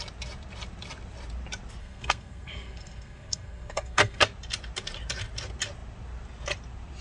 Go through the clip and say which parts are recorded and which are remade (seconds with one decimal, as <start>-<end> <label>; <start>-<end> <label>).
0.0-1.8 recorded; 1.8-4.2 remade; 4.2-7.0 recorded